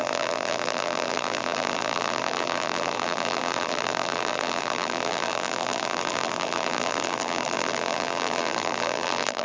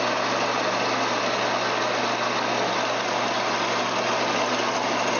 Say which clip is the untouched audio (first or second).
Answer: second